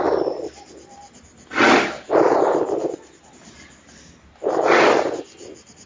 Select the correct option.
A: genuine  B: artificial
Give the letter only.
A